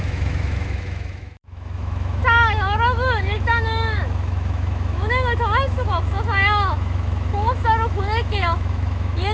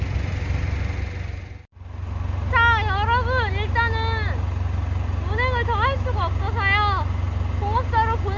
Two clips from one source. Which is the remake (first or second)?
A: first